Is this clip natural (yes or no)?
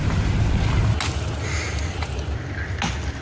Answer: yes